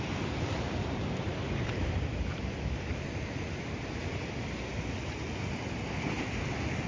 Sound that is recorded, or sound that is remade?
recorded